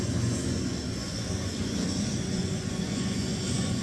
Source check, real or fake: fake